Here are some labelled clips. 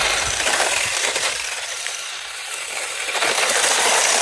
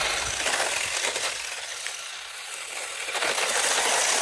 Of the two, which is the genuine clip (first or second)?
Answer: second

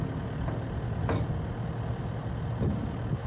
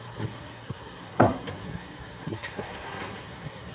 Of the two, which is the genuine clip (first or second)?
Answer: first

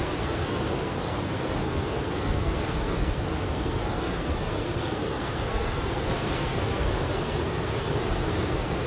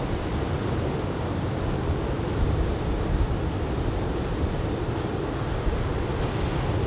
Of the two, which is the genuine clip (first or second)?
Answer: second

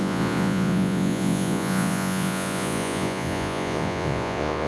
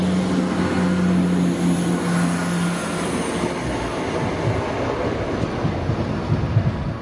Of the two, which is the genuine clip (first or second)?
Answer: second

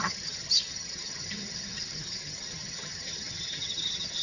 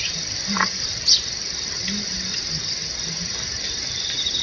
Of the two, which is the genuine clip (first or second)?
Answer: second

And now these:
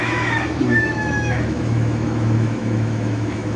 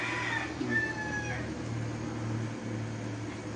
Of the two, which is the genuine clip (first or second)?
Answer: second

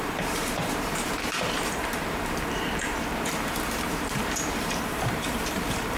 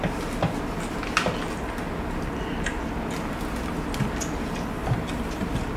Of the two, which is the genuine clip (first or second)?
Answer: second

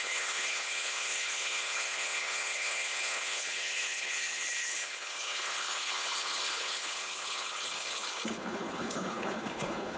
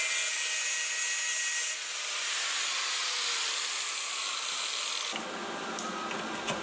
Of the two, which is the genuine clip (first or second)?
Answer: second